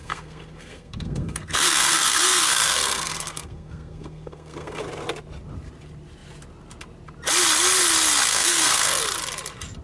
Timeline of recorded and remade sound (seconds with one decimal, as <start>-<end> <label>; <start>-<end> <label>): 0.0-4.8 remade; 4.8-8.3 recorded; 8.3-9.0 remade; 9.0-9.8 recorded

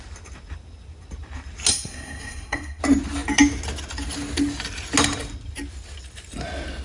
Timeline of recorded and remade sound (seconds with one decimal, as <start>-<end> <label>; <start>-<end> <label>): 0.0-1.7 recorded; 1.7-2.8 remade; 2.8-6.8 recorded

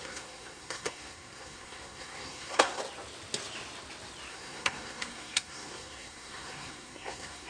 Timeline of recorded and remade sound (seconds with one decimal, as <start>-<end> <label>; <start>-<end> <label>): 0.0-2.8 remade; 2.8-4.3 recorded; 4.3-7.5 remade

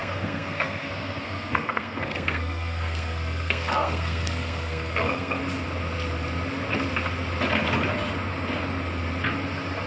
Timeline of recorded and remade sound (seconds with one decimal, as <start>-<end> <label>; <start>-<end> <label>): 0.0-5.4 remade; 5.4-9.9 recorded

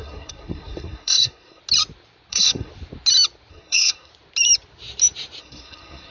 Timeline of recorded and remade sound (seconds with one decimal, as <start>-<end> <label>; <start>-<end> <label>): 0.0-1.6 remade; 1.6-2.3 recorded; 2.3-2.7 remade; 2.7-3.5 recorded; 3.5-4.1 remade; 4.1-5.4 recorded; 5.4-6.1 remade